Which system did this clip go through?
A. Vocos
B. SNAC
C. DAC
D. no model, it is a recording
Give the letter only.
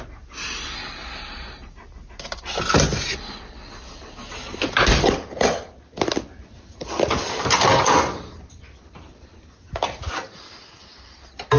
D